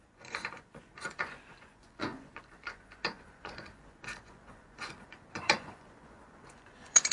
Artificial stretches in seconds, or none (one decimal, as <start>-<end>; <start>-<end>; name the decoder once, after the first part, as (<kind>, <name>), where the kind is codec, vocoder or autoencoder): 0.0-7.1 (vocoder, Vocos)